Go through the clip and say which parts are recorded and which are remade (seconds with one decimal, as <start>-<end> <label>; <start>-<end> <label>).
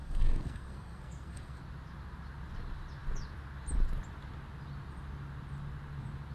0.0-1.6 remade; 1.6-6.3 recorded